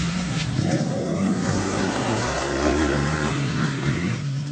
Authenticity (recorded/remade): remade